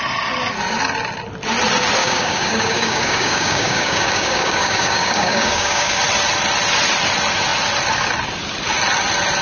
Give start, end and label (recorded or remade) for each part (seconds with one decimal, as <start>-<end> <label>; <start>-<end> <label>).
0.0-2.0 recorded; 2.0-6.0 remade; 6.0-9.4 recorded